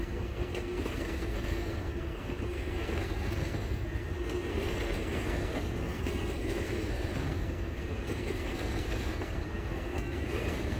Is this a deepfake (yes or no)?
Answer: yes